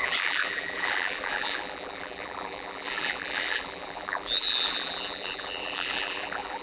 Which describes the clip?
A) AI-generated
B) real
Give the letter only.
A